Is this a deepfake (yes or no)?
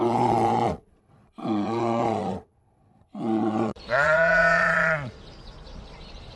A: yes